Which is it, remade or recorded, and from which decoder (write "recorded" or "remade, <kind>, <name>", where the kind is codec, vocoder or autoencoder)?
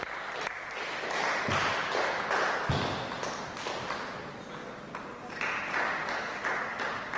recorded